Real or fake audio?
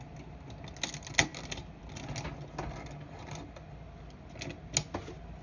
real